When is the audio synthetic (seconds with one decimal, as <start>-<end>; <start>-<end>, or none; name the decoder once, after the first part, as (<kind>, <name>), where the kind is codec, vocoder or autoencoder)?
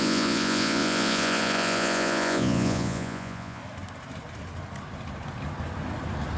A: 0.0-3.6 (vocoder, Vocos)